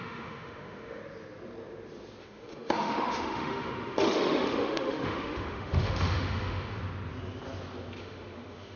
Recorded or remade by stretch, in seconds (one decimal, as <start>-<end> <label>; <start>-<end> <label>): 0.0-1.0 remade; 1.0-2.2 recorded; 2.2-6.8 remade; 6.8-8.0 recorded; 8.0-8.8 remade